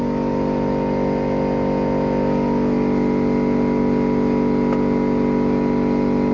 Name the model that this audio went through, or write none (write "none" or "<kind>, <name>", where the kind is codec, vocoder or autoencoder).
none